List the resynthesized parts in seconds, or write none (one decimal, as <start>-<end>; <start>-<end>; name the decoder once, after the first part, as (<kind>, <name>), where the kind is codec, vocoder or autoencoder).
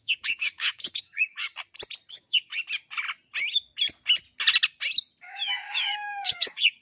0.0-1.5 (codec, DAC); 2.1-2.5; 5.2-6.8